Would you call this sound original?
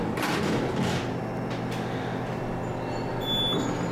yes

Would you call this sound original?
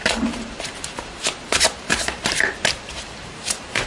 no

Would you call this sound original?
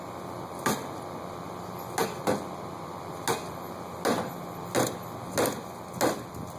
yes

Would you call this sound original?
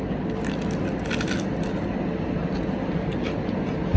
yes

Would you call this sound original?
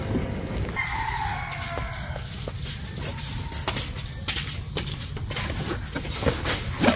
yes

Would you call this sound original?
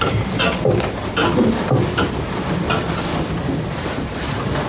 yes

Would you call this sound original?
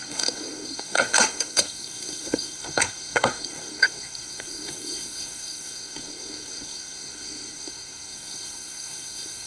no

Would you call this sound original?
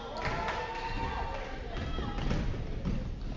yes